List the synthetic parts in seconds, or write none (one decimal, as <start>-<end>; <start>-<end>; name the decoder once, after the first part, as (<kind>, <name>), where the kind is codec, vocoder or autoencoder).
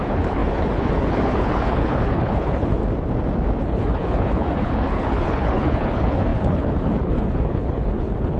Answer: 0.0-2.8 (codec, HILCodec); 3.6-8.4